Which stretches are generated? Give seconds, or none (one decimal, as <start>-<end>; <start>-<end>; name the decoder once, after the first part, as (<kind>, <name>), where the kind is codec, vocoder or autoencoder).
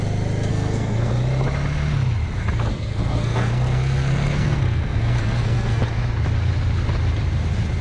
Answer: 0.5-1.1 (codec, SNAC); 2.7-5.8